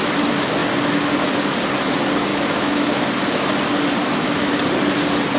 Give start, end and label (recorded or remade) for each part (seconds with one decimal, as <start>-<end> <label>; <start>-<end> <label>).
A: 0.0-2.3 recorded; 2.3-3.1 remade; 3.1-4.0 recorded; 4.0-4.5 remade; 4.5-5.4 recorded